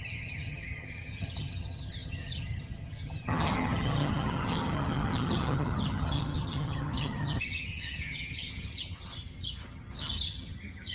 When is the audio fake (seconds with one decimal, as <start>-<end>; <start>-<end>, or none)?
0.0-10.9